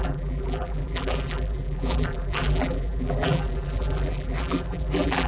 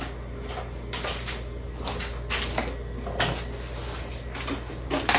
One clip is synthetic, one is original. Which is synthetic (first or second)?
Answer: first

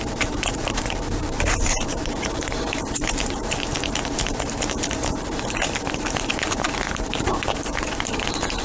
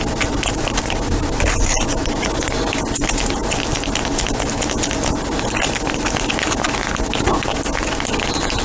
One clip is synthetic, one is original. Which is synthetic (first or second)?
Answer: first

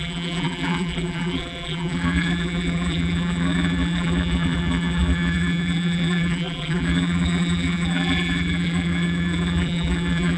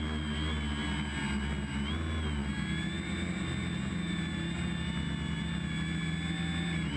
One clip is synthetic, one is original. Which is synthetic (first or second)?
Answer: first